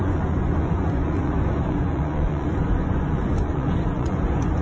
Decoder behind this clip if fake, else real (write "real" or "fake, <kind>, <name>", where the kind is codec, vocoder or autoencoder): fake, vocoder, Vocos